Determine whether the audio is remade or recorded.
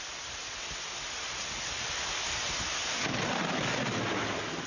recorded